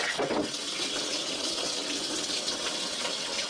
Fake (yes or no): yes